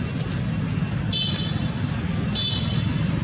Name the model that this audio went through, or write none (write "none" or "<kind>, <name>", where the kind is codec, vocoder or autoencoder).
none